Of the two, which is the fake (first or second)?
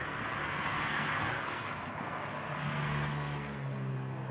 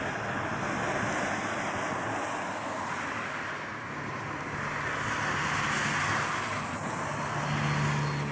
first